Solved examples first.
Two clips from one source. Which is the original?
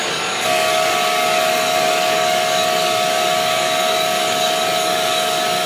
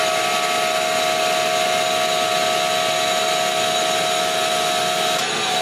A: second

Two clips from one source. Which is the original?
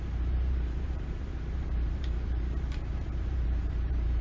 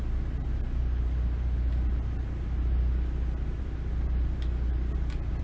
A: second